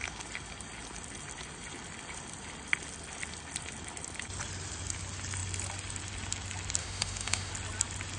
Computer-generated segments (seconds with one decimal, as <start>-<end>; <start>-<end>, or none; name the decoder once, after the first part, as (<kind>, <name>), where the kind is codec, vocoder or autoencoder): 6.8-7.5 (autoencoder, DAC-VAE)